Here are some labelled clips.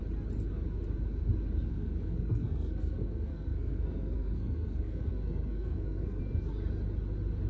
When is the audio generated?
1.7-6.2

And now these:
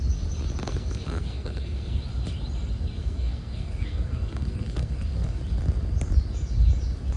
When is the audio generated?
0.6-2.0; 3.0-5.4

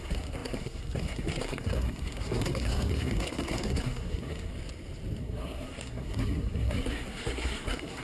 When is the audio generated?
0.0-4.5; 5.2-8.0

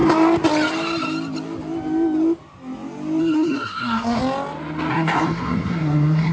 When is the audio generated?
3.2-4.2; 4.9-6.3